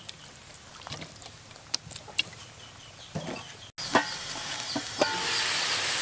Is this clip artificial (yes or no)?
no